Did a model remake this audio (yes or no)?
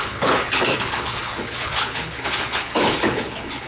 yes